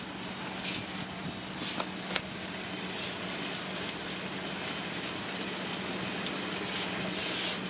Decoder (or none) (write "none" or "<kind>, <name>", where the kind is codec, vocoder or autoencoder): none